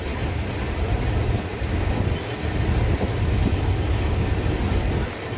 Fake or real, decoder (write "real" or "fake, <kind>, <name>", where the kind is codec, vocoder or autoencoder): real